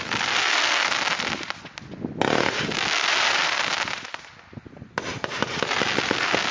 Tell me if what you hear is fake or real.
real